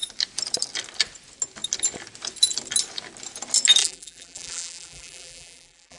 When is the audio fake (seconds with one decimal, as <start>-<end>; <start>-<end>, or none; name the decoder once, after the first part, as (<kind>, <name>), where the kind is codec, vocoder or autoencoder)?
3.8-6.0 (vocoder, BigVGAN v2)